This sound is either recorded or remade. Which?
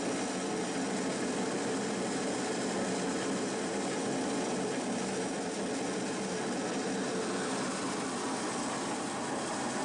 recorded